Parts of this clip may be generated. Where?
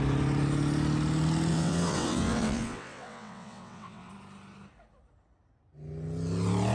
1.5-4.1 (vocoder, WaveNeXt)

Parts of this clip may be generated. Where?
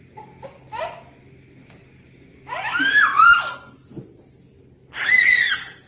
0.0-3.9 (vocoder, BigVGAN v2); 5.5-5.9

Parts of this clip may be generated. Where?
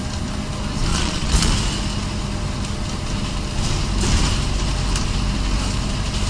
0.9-1.5 (vocoder, Vocos)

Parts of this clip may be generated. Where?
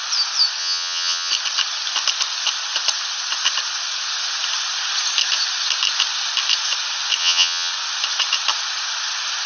0.6-1.3 (vocoder, HiFi-GAN); 7.2-7.7